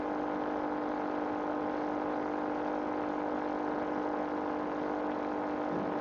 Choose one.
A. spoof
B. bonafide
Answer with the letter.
B